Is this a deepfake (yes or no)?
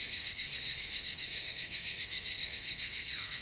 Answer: yes